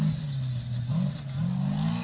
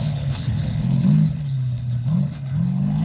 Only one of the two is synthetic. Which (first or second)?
second